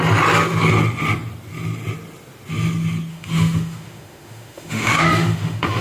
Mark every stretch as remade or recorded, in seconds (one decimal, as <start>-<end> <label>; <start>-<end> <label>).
0.0-3.1 recorded; 3.1-5.8 remade

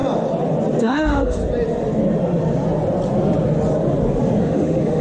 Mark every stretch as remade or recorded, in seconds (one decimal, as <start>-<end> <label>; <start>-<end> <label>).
0.0-0.8 recorded; 0.8-1.4 remade; 1.4-4.4 recorded; 4.4-5.0 remade

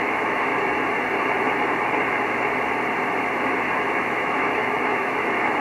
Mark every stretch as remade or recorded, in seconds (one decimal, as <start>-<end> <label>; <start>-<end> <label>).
0.0-0.5 remade; 0.5-3.9 recorded; 3.9-5.6 remade

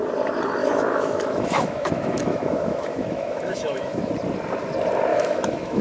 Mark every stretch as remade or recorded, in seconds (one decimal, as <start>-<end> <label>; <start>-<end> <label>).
0.0-0.6 recorded; 0.6-4.1 remade; 4.1-5.1 recorded; 5.1-5.8 remade

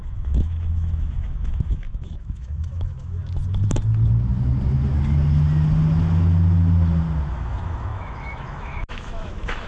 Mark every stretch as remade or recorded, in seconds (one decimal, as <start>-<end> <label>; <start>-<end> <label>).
0.0-3.2 remade; 3.2-7.3 recorded; 7.3-9.7 remade